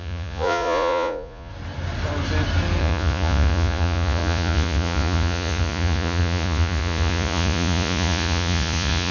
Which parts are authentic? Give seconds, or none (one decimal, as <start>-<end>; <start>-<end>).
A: 1.5-2.8